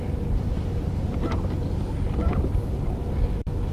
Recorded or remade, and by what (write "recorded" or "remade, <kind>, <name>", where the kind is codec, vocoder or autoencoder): recorded